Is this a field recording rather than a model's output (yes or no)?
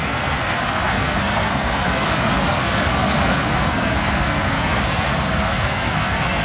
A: no